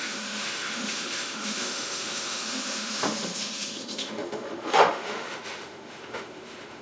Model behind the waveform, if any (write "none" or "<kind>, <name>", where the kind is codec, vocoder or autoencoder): autoencoder, DAC-VAE